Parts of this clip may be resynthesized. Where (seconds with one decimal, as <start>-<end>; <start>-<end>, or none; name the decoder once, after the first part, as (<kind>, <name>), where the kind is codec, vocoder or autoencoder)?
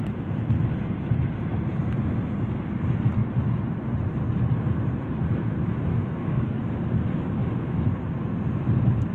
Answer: 5.9-6.6 (codec, SNAC)